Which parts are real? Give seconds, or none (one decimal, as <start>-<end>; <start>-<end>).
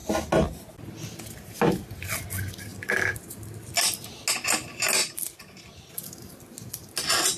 0.0-2.7; 3.7-5.0; 5.9-7.4